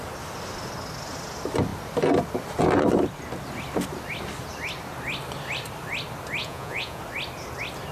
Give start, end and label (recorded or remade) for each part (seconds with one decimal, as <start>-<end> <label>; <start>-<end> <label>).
0.0-6.4 recorded; 6.4-7.0 remade; 7.0-7.9 recorded